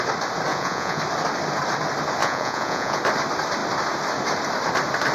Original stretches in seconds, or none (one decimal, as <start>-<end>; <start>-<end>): 0.0-0.5; 1.0-2.2; 3.0-5.1